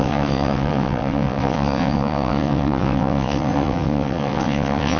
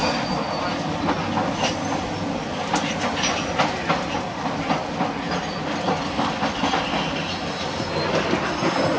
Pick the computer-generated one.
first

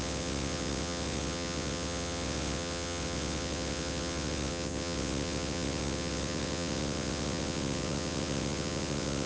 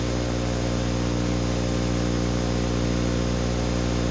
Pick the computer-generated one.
first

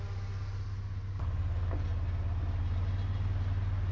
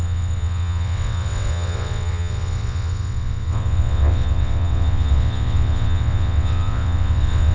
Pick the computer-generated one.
second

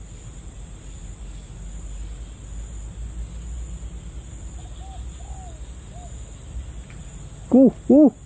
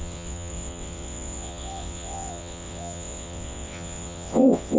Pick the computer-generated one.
second